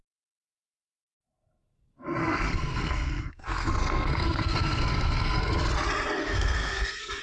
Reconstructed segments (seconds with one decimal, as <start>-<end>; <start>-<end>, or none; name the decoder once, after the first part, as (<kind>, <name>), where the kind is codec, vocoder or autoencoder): 2.2-5.4 (codec, SNAC); 6.2-7.2